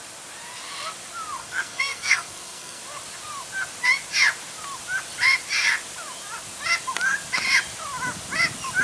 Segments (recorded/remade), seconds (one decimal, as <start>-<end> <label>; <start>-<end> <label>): 0.0-1.4 recorded; 1.4-2.8 remade; 2.8-8.8 recorded